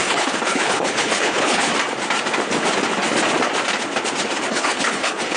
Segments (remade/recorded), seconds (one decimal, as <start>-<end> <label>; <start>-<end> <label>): 0.0-1.7 remade; 1.7-4.5 recorded; 4.5-5.4 remade